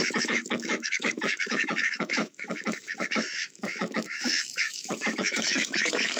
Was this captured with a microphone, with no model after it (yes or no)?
no